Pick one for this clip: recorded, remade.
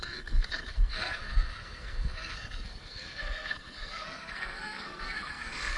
remade